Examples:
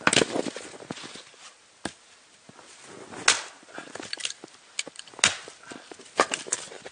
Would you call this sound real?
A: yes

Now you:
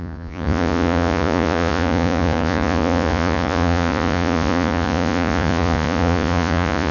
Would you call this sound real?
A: no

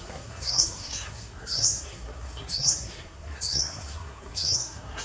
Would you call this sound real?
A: no